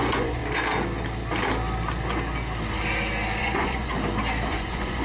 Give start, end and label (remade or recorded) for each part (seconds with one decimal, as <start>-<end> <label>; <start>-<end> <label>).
0.0-0.4 remade; 0.4-3.4 recorded; 3.4-3.9 remade; 3.9-4.5 recorded; 4.5-5.0 remade